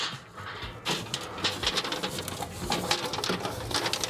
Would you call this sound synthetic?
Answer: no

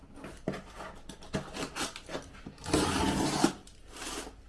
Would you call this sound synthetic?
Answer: no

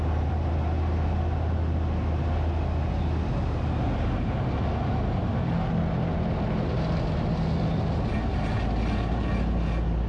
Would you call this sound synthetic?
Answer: no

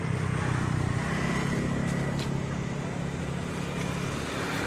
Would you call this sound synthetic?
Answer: no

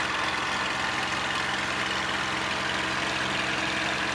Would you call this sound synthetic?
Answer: no